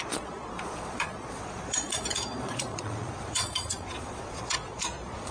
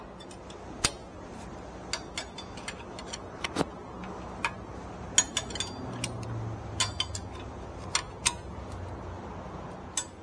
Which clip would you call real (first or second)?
second